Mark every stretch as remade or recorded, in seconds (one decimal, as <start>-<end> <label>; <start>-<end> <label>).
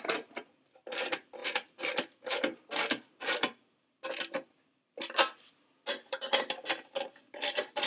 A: 0.0-7.9 remade